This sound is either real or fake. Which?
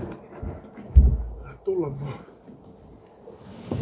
real